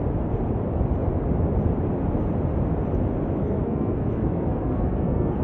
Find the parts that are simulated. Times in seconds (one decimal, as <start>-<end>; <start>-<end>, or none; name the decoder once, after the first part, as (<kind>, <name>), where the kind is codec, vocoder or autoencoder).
3.4-5.4 (codec, SNAC)